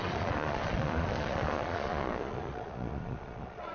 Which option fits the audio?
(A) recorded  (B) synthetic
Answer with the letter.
B